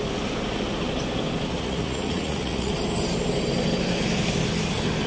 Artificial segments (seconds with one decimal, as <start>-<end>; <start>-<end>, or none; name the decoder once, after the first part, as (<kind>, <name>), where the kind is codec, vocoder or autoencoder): 1.5-2.7 (vocoder, Vocos)